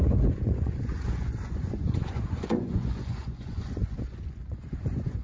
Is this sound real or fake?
fake